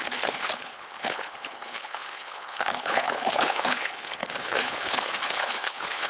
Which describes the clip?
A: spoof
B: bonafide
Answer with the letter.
A